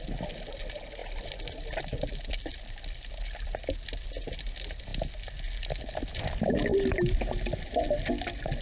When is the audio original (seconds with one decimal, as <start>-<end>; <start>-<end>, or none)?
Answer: 0.0-8.6